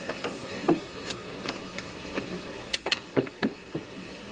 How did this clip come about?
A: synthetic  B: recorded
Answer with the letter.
A